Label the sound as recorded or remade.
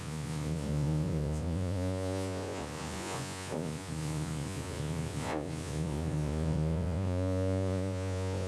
remade